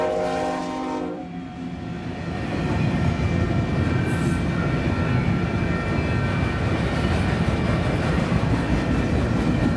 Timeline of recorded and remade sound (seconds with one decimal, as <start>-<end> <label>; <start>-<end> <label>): 0.0-9.8 recorded